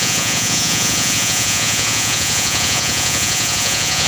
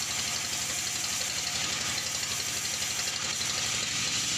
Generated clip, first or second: first